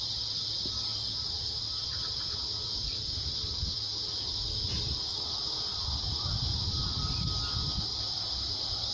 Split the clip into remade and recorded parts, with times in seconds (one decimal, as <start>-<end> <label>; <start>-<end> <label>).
0.0-0.9 recorded; 0.9-2.9 remade; 2.9-5.7 recorded; 5.7-7.2 remade; 7.2-7.9 recorded; 7.9-8.5 remade; 8.5-8.9 recorded